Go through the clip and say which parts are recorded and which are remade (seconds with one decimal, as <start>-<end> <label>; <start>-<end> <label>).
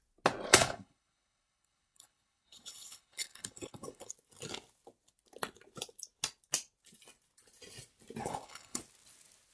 0.0-0.5 recorded; 0.5-4.1 remade; 4.1-8.2 recorded; 8.2-8.8 remade; 8.8-9.5 recorded